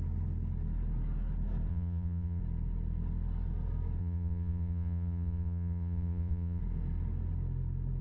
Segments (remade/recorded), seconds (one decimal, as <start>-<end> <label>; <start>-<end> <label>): 0.0-1.7 recorded; 1.7-2.4 remade; 2.4-4.0 recorded; 4.0-6.6 remade; 6.6-8.0 recorded